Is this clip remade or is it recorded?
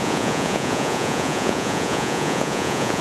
remade